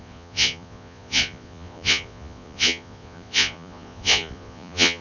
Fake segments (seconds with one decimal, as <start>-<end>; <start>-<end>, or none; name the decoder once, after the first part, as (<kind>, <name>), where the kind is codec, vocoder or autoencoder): 0.0-5.0 (vocoder, Vocos)